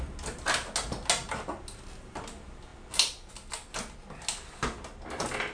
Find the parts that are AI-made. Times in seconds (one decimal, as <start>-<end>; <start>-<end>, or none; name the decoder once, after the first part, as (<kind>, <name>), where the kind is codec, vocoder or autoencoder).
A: none